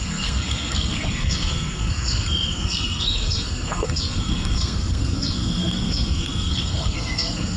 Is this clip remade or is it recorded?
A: remade